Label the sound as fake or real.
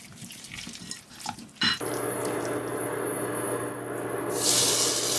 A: real